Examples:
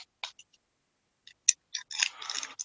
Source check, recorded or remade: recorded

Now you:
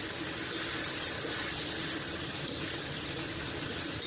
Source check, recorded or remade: recorded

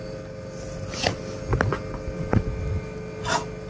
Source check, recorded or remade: recorded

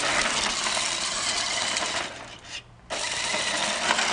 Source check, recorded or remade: recorded